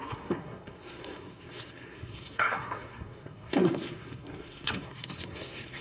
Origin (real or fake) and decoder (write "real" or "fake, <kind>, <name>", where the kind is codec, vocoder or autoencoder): fake, codec, SNAC